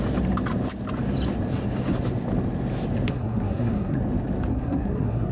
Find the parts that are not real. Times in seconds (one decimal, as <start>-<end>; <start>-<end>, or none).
3.1-4.0; 4.5-5.3

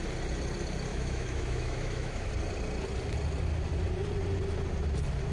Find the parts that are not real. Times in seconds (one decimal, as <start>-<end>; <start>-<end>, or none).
0.9-2.3

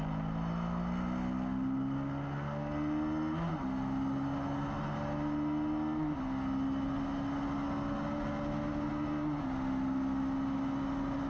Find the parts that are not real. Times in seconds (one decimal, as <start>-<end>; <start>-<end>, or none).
none

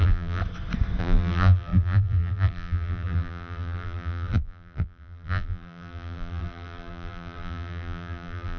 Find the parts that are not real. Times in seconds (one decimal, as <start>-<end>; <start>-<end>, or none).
0.0-0.4; 1.0-8.6

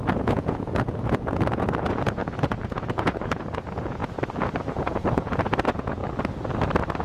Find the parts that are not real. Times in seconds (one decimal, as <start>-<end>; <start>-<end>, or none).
0.0-4.0; 4.7-6.0

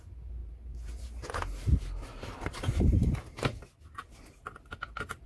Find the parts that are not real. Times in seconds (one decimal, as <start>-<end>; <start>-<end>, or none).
none

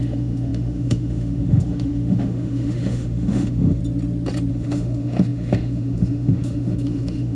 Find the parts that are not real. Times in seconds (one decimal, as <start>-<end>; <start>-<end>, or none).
0.0-3.8; 4.5-7.3